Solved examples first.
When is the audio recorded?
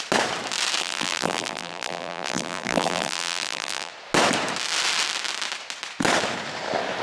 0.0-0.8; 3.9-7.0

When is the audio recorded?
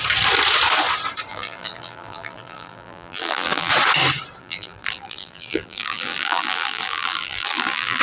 0.0-1.3; 3.7-4.4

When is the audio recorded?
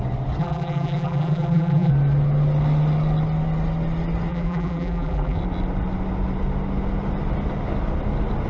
0.0-0.4; 1.9-4.3; 5.4-8.5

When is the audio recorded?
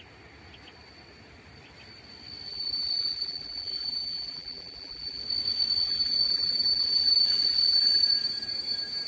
0.0-2.5; 5.2-5.8; 8.0-9.1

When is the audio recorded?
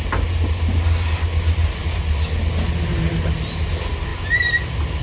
0.0-5.0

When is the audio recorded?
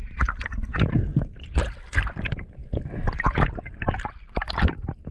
1.1-2.2; 2.6-3.5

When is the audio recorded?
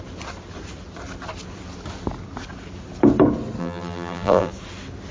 0.0-3.6; 4.5-5.1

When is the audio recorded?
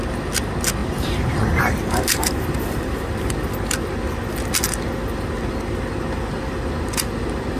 0.0-0.8; 3.0-7.6